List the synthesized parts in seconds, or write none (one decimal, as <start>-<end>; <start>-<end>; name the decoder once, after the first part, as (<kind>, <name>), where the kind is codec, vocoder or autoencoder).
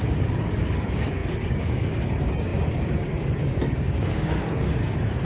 0.0-5.2 (codec, DAC)